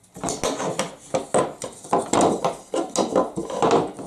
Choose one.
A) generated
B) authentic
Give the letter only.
B